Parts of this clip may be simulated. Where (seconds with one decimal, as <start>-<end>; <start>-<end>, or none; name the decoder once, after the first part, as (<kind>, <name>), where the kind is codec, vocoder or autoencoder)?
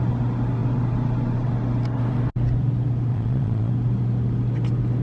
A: 3.1-3.7 (vocoder, Vocos)